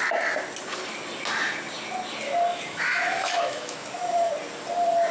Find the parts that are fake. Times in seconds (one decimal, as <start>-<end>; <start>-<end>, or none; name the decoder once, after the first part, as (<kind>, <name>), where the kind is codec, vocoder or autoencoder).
2.5-4.3 (autoencoder, DAC-VAE)